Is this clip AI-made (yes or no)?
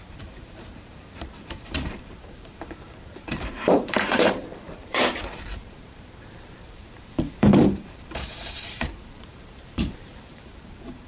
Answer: yes